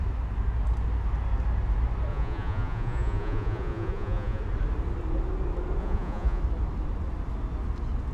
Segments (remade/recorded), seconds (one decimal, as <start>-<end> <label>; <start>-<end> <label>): 0.0-2.1 recorded; 2.1-4.4 remade; 4.4-5.8 recorded; 5.8-6.4 remade; 6.4-8.1 recorded